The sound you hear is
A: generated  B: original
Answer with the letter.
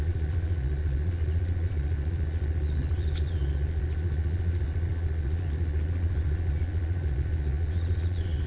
A